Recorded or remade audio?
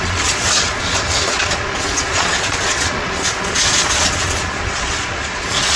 remade